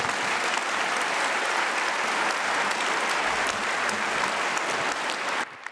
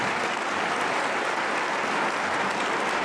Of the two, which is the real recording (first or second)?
second